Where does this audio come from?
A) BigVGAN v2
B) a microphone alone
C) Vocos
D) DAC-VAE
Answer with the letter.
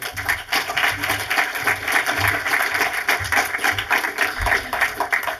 B